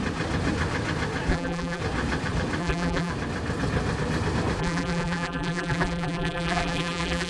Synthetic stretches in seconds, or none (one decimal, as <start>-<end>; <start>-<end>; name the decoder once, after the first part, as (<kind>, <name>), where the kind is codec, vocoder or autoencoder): 1.3-1.8 (vocoder, BigVGAN v2); 2.6-3.1; 4.6-7.3